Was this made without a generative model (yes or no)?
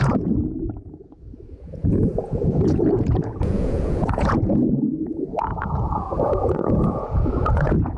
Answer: no